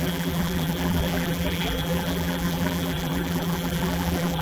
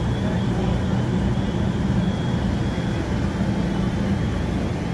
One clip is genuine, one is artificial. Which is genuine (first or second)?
second